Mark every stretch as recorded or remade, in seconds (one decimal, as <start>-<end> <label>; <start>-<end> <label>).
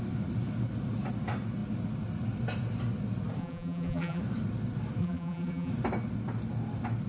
0.0-3.4 recorded; 3.4-4.2 remade; 4.2-5.0 recorded; 5.0-5.7 remade; 5.7-7.1 recorded